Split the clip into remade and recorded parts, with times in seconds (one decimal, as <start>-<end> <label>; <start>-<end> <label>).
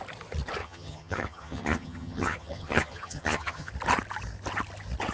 0.0-0.6 recorded; 0.6-3.7 remade; 3.7-5.1 recorded